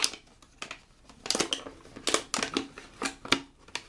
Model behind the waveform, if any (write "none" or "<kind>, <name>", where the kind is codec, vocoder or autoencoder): none